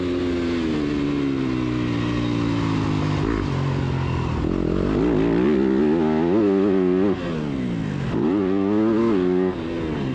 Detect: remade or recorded recorded